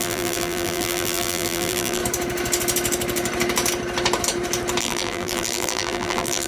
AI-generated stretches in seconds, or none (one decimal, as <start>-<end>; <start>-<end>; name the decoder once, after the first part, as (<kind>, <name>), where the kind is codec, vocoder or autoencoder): 0.0-2.0 (vocoder, BigVGAN v2); 4.8-6.5